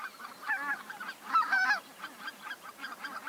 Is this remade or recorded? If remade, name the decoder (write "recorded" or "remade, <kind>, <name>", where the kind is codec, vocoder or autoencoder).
remade, vocoder, BigVGAN v2